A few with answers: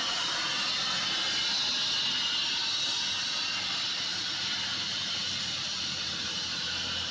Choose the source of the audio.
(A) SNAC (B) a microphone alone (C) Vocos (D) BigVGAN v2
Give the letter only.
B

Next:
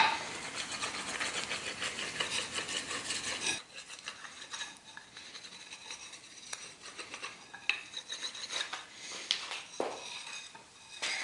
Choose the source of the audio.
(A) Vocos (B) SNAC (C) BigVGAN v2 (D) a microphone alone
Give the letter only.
D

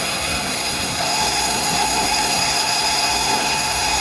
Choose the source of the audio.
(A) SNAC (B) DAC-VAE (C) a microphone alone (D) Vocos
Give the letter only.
A